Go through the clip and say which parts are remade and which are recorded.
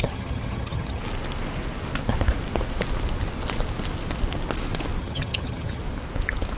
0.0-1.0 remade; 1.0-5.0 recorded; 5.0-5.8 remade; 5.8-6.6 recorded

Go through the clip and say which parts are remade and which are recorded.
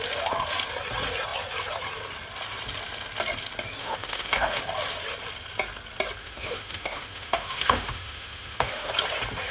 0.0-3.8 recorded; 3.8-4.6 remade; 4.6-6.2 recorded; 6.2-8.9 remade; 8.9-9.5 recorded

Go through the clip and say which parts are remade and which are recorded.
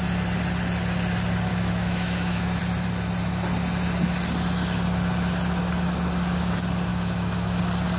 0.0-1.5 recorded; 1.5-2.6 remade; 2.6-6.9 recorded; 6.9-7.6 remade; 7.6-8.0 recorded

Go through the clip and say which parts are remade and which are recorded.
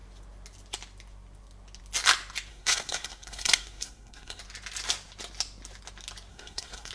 0.0-2.5 recorded; 2.5-4.4 remade; 4.4-6.3 recorded; 6.3-6.9 remade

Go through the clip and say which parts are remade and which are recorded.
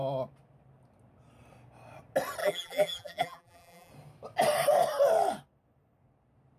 0.0-2.4 recorded; 2.4-3.9 remade; 3.9-6.6 recorded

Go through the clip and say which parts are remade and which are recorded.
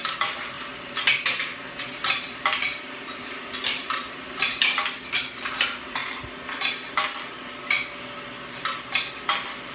0.0-6.0 remade; 6.0-9.7 recorded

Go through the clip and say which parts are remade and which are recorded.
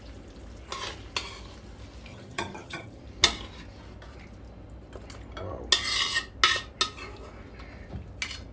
0.0-2.1 recorded; 2.1-3.0 remade; 3.0-8.5 recorded